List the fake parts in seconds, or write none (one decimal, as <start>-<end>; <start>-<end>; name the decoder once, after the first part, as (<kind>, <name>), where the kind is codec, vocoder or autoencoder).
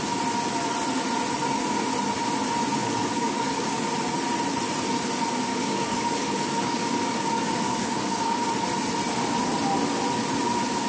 2.8-3.8 (codec, DAC); 5.5-8.5